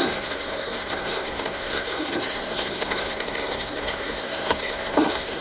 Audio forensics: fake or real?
fake